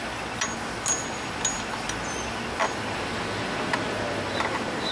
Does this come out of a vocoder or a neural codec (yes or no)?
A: no